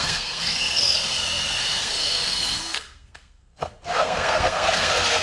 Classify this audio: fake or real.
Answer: fake